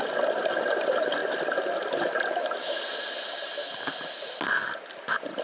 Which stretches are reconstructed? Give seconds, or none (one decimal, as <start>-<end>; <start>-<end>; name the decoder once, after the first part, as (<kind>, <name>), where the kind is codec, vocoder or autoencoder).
none

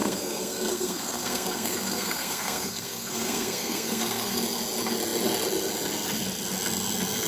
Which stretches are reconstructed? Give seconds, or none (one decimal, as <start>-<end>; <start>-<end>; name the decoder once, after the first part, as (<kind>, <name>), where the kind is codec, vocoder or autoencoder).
0.0-4.4 (codec, SNAC)

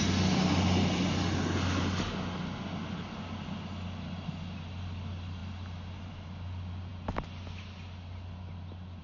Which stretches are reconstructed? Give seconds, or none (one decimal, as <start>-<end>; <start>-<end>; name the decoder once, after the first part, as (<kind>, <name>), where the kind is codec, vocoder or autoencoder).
none

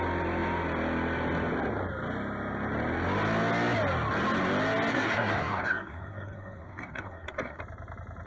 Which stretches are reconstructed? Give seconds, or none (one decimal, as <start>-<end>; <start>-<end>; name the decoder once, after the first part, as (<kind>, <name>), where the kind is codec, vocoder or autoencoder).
4.9-7.6 (codec, SNAC)

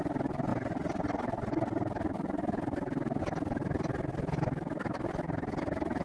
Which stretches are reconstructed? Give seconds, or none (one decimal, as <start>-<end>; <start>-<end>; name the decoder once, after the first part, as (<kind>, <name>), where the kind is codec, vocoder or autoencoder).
none